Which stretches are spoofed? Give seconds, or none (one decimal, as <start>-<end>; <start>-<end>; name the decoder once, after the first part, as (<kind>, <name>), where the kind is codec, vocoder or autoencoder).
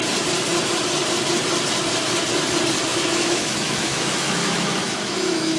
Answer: 2.9-5.6 (autoencoder, DAC-VAE)